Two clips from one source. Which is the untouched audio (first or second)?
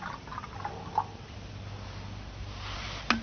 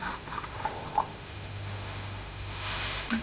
first